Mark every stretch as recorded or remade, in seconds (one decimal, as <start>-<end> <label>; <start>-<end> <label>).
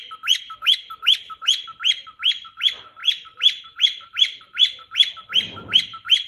0.0-3.0 recorded; 3.0-6.3 remade